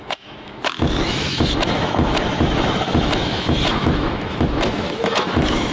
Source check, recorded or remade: remade